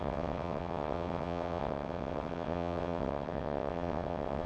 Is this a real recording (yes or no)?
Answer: no